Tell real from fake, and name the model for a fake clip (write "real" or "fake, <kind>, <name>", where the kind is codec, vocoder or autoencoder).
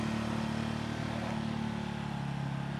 real